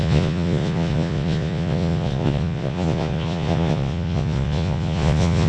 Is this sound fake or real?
fake